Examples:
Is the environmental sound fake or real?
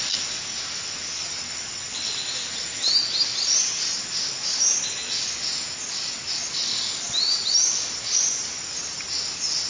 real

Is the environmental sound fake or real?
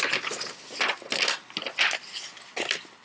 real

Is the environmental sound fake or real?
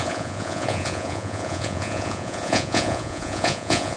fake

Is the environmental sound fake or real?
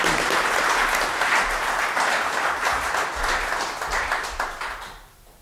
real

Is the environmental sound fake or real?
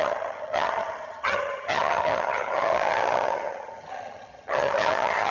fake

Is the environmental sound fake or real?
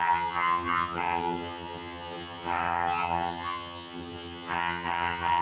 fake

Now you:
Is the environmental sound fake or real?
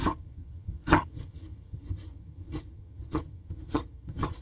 fake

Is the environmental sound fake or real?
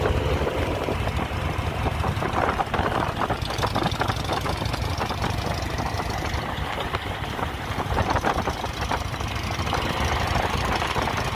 real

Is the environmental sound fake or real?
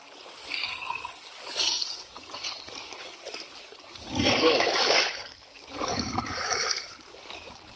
fake